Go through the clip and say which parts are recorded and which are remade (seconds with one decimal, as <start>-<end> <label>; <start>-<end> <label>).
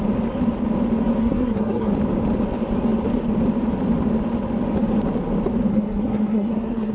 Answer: 0.0-1.2 recorded; 1.2-1.9 remade; 1.9-5.7 recorded; 5.7-6.9 remade